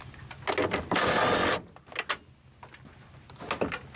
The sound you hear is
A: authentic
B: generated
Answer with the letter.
A